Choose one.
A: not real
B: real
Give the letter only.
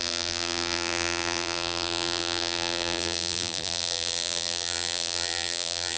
A